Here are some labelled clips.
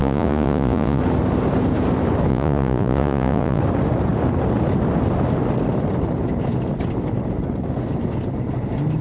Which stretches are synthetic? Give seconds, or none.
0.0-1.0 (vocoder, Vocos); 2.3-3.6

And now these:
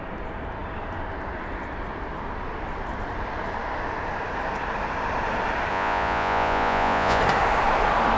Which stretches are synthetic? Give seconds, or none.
5.7-7.2 (vocoder, Vocos)

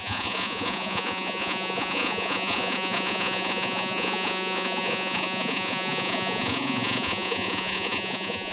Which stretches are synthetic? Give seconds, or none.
0.0-8.5 (vocoder, Vocos)

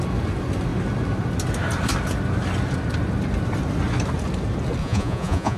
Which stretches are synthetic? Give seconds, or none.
4.8-5.6 (vocoder, Vocos)

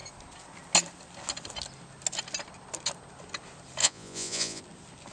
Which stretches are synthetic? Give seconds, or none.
3.8-4.6 (vocoder, Vocos)

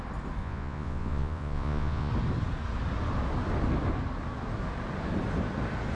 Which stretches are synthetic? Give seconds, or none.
0.4-2.1 (vocoder, Vocos)

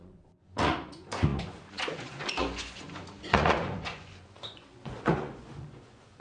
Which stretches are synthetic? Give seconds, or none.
0.0-6.2 (vocoder, Vocos)